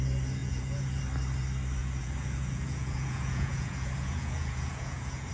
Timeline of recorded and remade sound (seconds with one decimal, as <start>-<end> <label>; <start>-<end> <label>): 0.0-0.4 recorded; 0.4-1.0 remade; 1.0-1.8 recorded; 1.8-5.3 remade